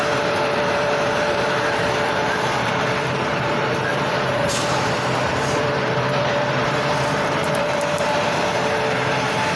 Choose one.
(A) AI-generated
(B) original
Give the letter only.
A